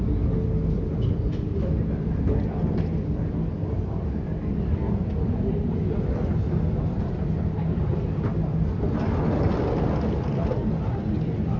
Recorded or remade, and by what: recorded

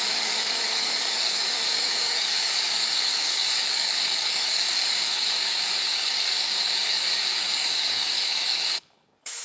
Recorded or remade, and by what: remade, codec, DAC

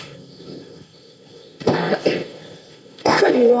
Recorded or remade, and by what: remade, codec, ZipCodec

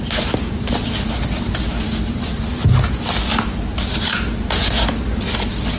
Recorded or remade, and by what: recorded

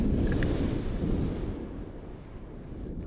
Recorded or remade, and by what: recorded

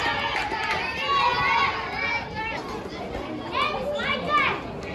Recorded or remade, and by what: recorded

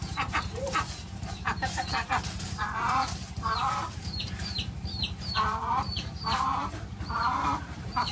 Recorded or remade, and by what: remade, vocoder, BigVGAN v2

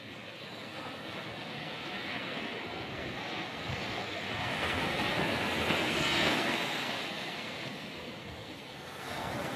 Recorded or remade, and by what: remade, codec, SNAC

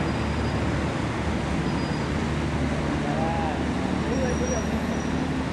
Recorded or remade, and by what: recorded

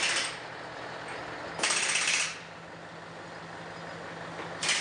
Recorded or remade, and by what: recorded